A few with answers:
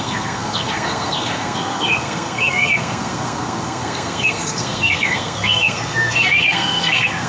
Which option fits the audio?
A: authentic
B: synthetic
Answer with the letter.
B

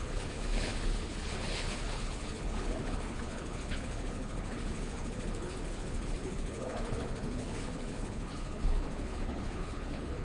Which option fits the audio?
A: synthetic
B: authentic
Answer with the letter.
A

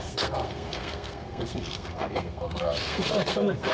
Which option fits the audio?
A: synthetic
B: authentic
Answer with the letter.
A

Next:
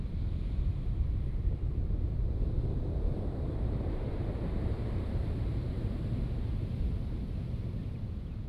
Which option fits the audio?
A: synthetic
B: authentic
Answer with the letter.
A